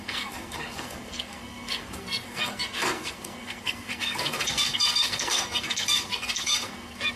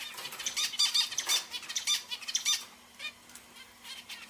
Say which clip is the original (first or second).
second